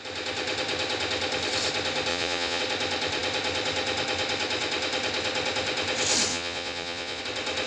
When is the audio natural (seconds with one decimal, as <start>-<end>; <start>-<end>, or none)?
0.0-2.1; 2.6-6.3; 7.2-7.7